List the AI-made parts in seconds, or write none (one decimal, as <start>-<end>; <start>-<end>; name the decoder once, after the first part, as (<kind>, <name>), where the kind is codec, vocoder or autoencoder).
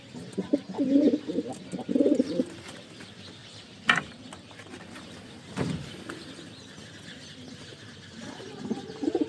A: 3.4-5.9 (vocoder, BigVGAN v2)